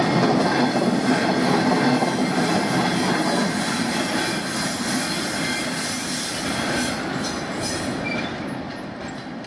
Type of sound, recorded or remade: recorded